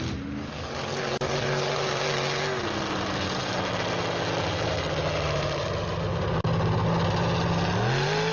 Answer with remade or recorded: recorded